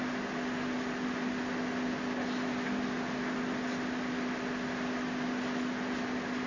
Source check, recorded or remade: recorded